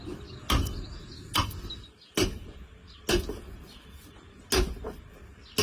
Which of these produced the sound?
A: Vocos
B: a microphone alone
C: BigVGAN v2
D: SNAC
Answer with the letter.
B